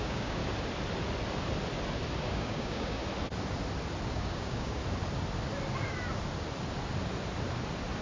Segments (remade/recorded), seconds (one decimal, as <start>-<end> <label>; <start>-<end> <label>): 0.0-0.4 remade; 0.4-2.2 recorded; 2.2-3.0 remade; 3.0-4.1 recorded; 4.1-4.8 remade; 4.8-8.0 recorded